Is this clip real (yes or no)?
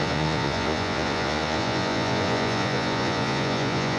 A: no